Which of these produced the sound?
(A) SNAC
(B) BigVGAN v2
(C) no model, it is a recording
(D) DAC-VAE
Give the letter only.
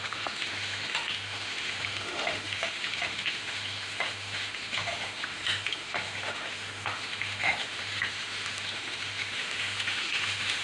D